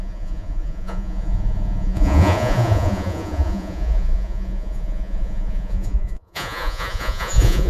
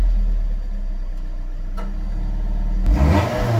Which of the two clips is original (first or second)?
second